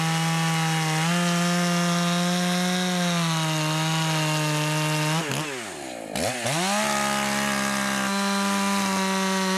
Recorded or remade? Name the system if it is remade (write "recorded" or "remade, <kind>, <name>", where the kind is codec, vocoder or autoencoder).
recorded